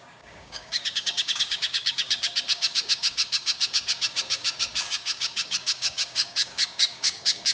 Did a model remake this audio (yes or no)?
yes